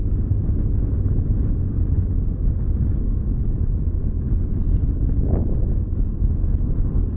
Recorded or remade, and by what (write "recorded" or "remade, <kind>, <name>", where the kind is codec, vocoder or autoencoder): recorded